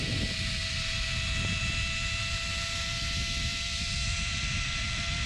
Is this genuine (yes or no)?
yes